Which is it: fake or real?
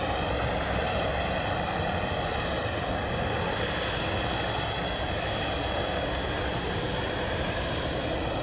real